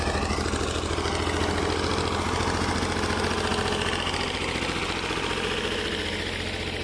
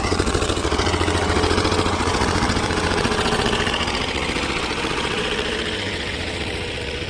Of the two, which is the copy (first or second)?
second